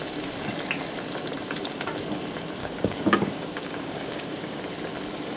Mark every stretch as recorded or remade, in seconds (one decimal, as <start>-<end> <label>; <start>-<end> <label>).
0.0-2.6 recorded; 2.6-4.6 remade; 4.6-5.4 recorded